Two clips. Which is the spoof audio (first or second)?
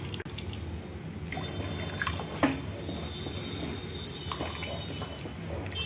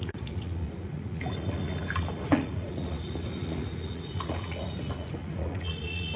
second